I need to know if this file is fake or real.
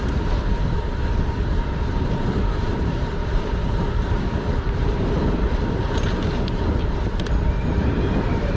fake